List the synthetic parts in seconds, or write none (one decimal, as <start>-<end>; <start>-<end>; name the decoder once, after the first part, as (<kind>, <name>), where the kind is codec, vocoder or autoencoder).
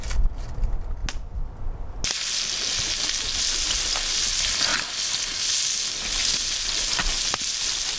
4.7-5.2 (vocoder, BigVGAN v2)